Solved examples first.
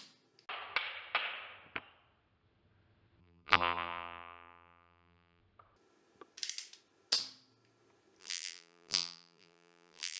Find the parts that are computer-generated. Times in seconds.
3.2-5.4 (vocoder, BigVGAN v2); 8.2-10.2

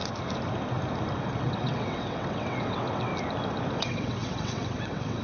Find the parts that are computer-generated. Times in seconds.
1.4-3.1 (vocoder, WaveNeXt); 3.7-5.2

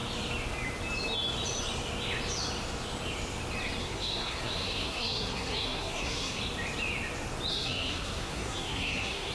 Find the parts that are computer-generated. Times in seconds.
3.8-6.4 (codec, SNAC); 7.5-9.3

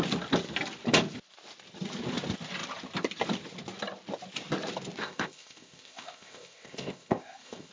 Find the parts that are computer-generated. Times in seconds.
5.0-7.7 (codec, ZipCodec)

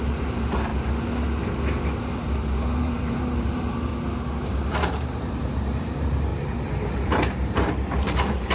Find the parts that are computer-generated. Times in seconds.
0.0-0.7 (vocoder, BigVGAN v2); 2.8-3.9; 4.4-6.3; 6.8-8.5

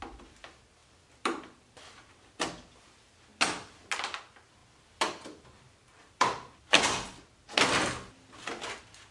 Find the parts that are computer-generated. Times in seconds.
0.8-1.8 (vocoder, BigVGAN v2); 4.6-6.8